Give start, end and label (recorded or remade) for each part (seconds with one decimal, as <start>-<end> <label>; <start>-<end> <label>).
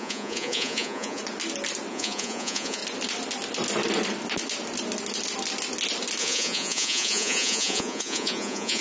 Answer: 0.0-1.2 remade; 1.2-1.9 recorded; 1.9-2.8 remade; 2.8-6.2 recorded; 6.2-8.8 remade